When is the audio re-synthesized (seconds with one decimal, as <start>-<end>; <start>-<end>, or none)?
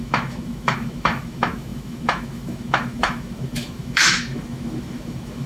0.0-5.5